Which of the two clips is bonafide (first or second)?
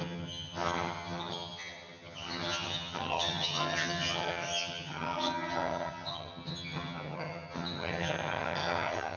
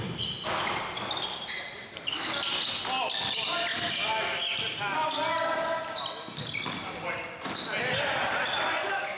second